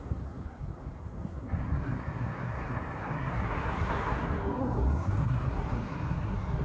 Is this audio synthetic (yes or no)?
yes